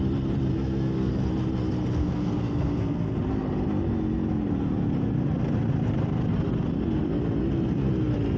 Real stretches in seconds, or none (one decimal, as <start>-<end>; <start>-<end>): 0.0-0.5; 1.1-2.0; 3.2-8.4